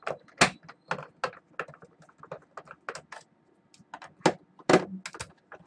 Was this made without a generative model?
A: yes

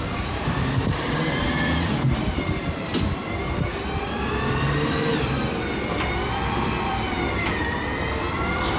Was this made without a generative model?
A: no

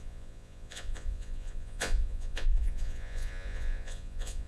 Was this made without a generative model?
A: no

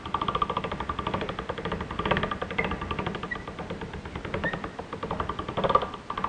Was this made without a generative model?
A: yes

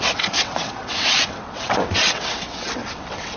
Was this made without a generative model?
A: no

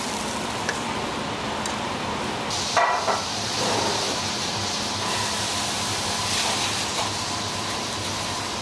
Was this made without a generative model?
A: yes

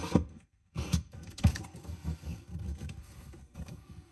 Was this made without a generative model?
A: no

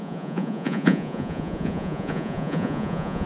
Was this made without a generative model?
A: no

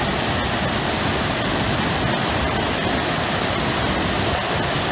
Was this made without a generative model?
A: yes